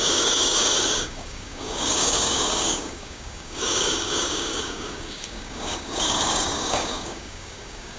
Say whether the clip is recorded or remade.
remade